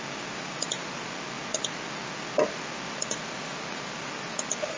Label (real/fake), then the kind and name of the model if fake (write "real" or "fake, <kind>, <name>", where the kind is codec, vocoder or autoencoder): real